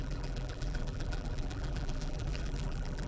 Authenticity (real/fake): fake